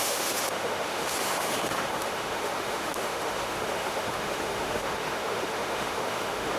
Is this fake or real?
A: fake